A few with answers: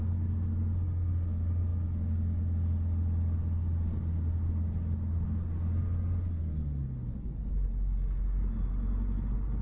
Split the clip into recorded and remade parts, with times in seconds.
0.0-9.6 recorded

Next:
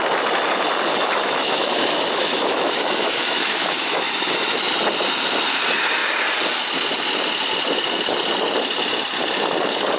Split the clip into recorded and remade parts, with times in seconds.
0.0-0.9 recorded; 0.9-4.7 remade; 4.7-10.0 recorded

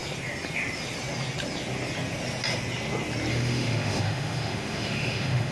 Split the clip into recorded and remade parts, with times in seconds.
0.0-3.3 recorded; 3.3-5.5 remade

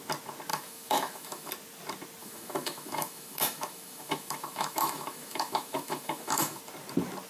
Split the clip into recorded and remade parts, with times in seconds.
0.0-0.5 recorded; 0.5-1.5 remade; 1.5-2.2 recorded; 2.2-6.6 remade; 6.6-7.3 recorded

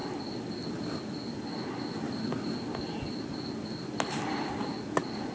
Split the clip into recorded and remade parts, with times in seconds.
0.0-5.3 recorded

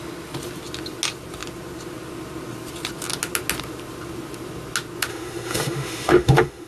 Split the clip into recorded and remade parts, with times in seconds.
0.0-5.1 recorded; 5.1-6.7 remade

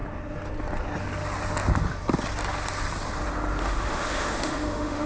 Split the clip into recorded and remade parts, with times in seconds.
0.0-3.6 recorded; 3.6-5.1 remade